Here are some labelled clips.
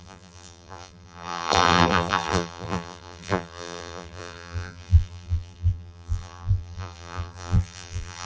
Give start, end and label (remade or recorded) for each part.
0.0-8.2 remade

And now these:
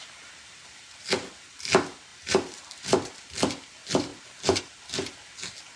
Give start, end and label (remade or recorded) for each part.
0.0-2.1 recorded; 2.1-3.2 remade; 3.2-4.1 recorded; 4.1-4.6 remade; 4.6-5.8 recorded

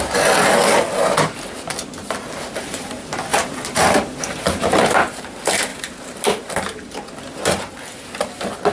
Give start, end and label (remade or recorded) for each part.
0.0-3.3 recorded; 3.3-5.2 remade; 5.2-5.7 recorded; 5.7-8.0 remade; 8.0-8.7 recorded

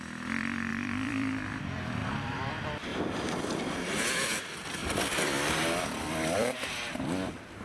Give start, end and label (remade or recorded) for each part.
0.0-0.7 recorded; 0.7-1.6 remade; 1.6-2.0 recorded; 2.0-2.5 remade; 2.5-4.8 recorded; 4.8-6.9 remade; 6.9-7.6 recorded

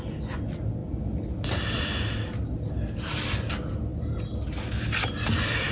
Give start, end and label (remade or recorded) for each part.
0.0-5.7 recorded

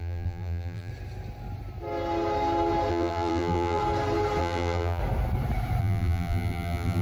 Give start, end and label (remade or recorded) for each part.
0.0-0.9 remade; 0.9-2.9 recorded; 2.9-3.8 remade; 3.8-4.4 recorded; 4.4-5.0 remade; 5.0-5.8 recorded; 5.8-7.0 remade

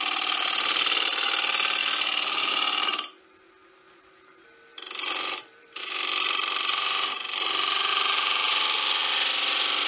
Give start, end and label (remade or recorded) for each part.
0.0-4.7 recorded; 4.7-5.8 remade; 5.8-9.9 recorded